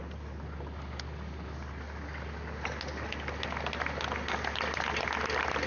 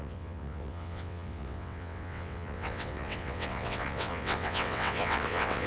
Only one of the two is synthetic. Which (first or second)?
second